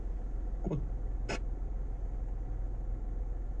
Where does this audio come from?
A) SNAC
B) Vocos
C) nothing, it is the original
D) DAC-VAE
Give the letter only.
C